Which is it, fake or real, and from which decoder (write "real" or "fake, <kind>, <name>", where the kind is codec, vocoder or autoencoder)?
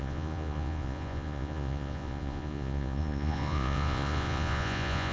fake, vocoder, Vocos